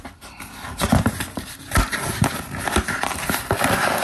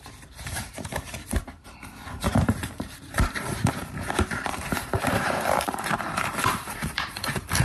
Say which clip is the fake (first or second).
second